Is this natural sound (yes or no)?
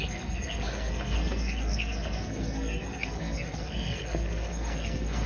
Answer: no